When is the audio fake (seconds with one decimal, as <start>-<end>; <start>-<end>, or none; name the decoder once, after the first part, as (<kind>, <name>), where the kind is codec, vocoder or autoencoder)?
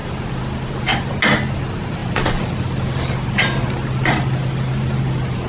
0.0-1.1 (vocoder, BigVGAN v2); 2.0-5.5